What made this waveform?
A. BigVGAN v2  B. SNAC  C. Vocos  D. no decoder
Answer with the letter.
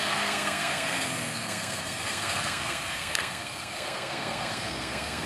B